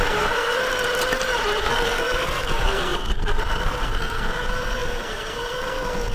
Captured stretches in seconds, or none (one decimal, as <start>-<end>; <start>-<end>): 0.6-1.6